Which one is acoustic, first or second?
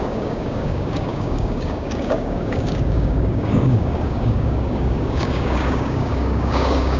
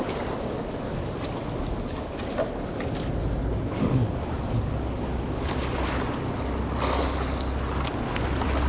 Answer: second